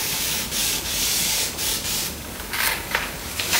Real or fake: fake